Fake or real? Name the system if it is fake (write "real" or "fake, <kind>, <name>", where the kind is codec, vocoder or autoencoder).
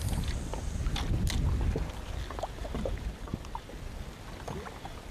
real